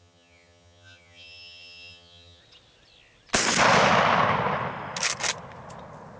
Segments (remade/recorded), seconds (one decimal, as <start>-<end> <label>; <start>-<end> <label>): 0.0-2.4 remade; 2.4-6.2 recorded